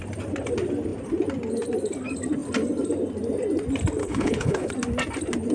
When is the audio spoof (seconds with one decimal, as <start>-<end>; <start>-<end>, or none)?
4.0-4.7